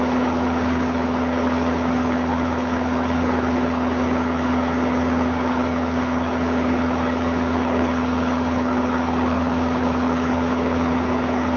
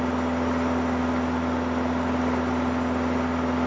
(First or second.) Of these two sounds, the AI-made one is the first